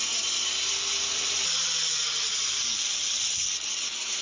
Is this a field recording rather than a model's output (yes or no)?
yes